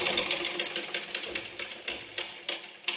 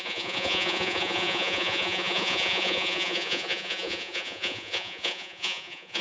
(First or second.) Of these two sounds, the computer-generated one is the second